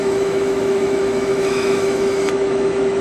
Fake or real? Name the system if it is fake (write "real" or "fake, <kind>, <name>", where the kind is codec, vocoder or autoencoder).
fake, autoencoder, DAC-VAE